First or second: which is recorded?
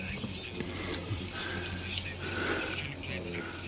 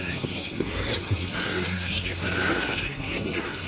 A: first